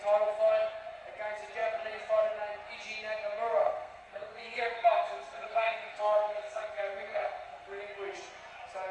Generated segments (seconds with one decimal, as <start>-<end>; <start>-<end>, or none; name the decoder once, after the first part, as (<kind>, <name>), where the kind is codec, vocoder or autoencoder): 3.6-7.8 (codec, SNAC)

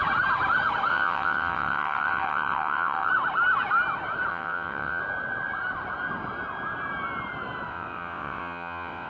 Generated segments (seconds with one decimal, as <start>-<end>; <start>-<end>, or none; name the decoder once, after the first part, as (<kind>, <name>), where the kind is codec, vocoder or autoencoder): 0.9-3.1 (vocoder, WaveNeXt); 4.3-5.0; 7.7-9.1

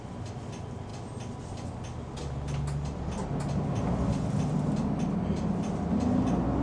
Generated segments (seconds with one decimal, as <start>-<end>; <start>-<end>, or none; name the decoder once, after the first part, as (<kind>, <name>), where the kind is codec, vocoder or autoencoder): none

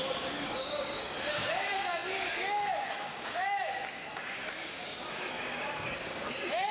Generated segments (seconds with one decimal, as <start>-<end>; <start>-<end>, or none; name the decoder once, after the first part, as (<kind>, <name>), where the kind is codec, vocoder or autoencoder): 0.0-6.7 (codec, DAC)

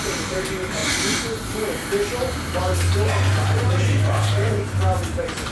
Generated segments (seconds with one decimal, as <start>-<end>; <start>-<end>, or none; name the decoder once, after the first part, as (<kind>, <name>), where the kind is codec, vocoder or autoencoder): none

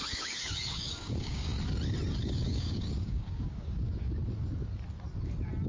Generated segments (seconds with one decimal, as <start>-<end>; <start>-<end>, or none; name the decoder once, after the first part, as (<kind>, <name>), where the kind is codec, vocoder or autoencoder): 0.0-1.5 (codec, DAC); 2.1-4.2

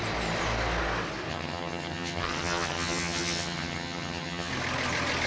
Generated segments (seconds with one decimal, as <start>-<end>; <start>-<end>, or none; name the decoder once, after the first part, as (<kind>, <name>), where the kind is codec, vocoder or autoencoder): 1.3-4.5 (vocoder, HiFi-GAN)